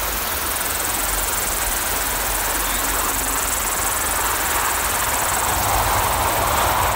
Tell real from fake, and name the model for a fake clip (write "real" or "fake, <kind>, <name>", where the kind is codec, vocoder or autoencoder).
real